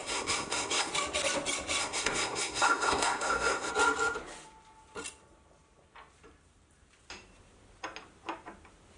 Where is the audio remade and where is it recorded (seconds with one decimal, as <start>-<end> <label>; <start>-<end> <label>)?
0.0-0.9 remade; 0.9-1.8 recorded; 1.8-3.7 remade; 3.7-9.0 recorded